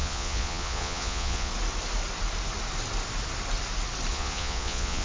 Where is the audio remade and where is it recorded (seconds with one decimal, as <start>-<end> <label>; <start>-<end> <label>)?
0.0-1.5 remade; 1.5-4.1 recorded; 4.1-5.0 remade